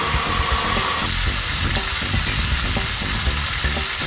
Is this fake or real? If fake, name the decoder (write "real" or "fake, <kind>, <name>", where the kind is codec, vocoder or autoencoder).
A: real